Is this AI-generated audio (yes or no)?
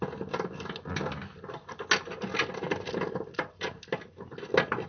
no